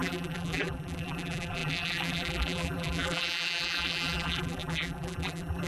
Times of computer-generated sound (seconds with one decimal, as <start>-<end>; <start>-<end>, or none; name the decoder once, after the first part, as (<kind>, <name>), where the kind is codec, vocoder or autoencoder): 0.0-5.7 (vocoder, BigVGAN v2)

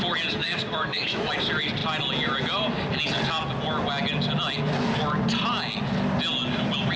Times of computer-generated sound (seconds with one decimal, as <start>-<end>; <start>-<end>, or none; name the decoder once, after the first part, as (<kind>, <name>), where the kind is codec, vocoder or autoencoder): 0.4-1.3 (autoencoder, DAC-VAE)